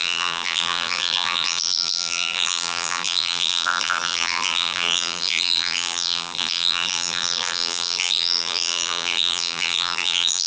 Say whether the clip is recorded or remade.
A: remade